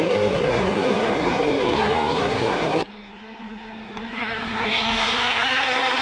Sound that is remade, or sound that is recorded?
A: remade